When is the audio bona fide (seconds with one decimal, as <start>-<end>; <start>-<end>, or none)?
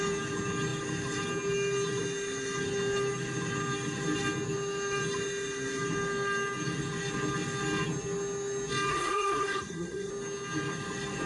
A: 0.0-8.9; 10.1-11.3